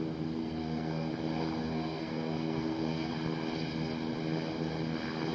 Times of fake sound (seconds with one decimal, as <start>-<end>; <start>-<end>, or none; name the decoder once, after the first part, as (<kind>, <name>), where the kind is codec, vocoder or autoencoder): 0.4-1.1 (codec, SNAC); 1.6-3.1